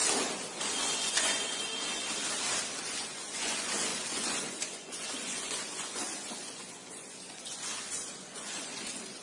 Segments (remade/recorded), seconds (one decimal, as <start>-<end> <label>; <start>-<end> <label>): 0.0-0.6 recorded; 0.6-1.7 remade; 1.7-2.8 recorded; 2.8-9.2 remade